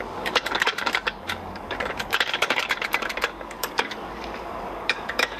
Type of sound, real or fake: fake